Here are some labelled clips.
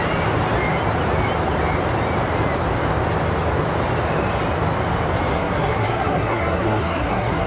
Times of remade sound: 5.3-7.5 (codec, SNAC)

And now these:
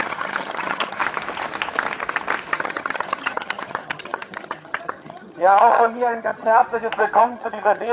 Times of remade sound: 0.0-1.0 (vocoder, HiFi-GAN); 2.5-6.6; 7.2-7.9

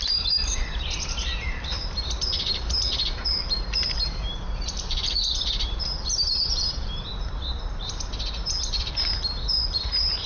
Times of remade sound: 0.0-8.1 (vocoder, BigVGAN v2); 8.8-10.3